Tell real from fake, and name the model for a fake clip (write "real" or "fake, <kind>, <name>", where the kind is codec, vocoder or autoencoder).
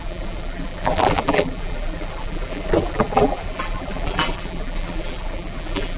fake, vocoder, BigVGAN v2